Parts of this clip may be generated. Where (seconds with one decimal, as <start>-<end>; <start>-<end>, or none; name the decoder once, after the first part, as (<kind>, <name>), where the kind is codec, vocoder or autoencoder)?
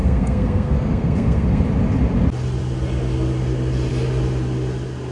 0.0-1.6 (codec, SNAC)